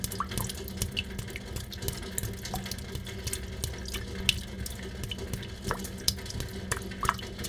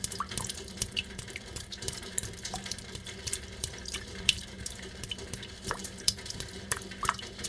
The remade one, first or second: second